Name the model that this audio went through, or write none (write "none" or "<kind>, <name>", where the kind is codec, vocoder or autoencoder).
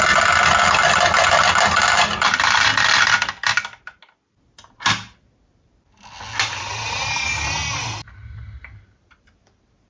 none